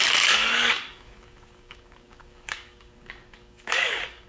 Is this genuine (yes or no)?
no